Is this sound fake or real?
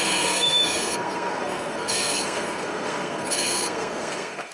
fake